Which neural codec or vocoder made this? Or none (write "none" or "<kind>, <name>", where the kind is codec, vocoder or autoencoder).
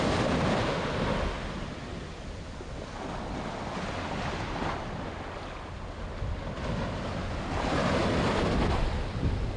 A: none